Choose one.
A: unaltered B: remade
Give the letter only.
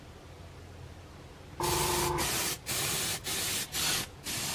B